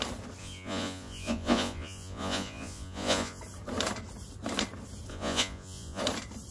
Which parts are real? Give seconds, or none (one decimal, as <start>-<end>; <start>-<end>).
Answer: 0.0-0.4; 3.4-5.1; 6.0-6.5